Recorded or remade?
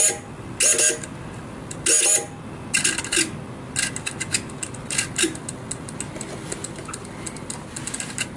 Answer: recorded